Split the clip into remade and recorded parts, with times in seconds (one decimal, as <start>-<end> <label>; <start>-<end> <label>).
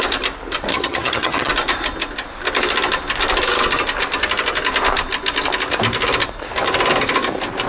0.0-0.7 recorded; 0.7-1.5 remade; 1.5-7.7 recorded